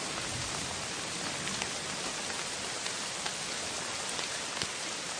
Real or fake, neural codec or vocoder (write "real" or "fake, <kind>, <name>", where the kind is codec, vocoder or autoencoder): real